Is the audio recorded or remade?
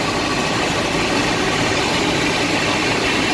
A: recorded